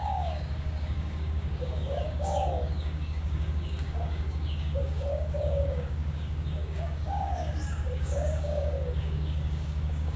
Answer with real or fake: fake